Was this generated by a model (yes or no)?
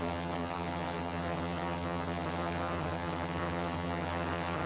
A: yes